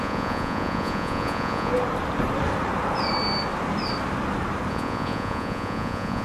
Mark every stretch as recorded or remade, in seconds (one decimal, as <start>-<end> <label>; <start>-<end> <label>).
0.0-1.7 remade; 1.7-4.7 recorded; 4.7-6.2 remade